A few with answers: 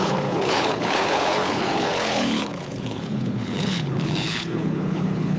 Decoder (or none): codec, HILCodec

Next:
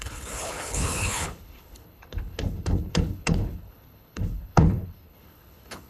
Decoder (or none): codec, HILCodec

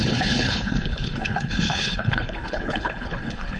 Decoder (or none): codec, HILCodec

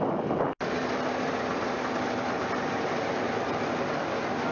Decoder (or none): none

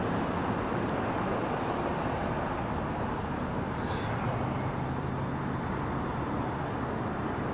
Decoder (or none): none